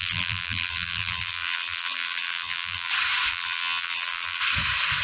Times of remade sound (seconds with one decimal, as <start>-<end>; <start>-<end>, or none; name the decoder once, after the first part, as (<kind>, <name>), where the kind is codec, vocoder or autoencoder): 0.0-2.9 (vocoder, BigVGAN v2); 3.3-4.4